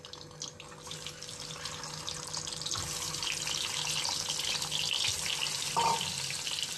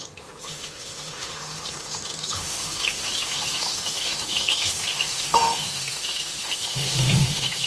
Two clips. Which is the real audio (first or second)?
first